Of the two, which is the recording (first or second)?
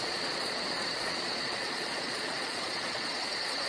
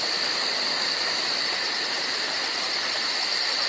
second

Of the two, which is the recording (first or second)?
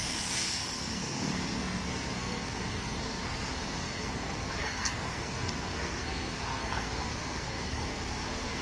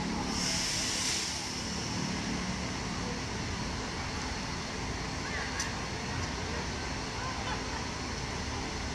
second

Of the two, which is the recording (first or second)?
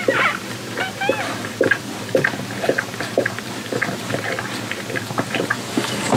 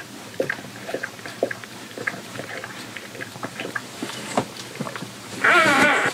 first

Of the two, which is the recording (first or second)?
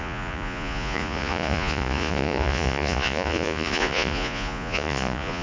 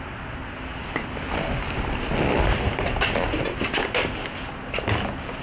second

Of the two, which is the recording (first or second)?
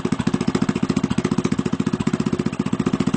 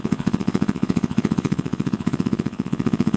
first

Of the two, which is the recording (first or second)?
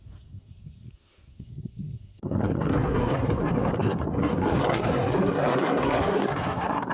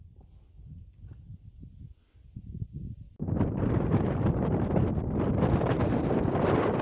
second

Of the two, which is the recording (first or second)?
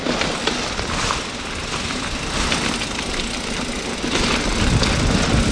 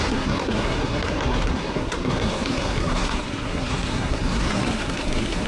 first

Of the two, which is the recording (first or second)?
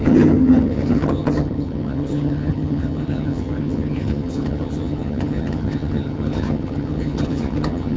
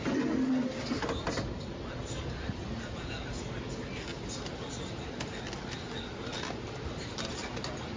second